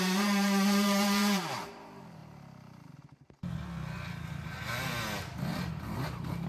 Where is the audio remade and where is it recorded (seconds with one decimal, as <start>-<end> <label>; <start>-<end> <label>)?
0.0-2.2 remade; 2.2-5.7 recorded; 5.7-6.5 remade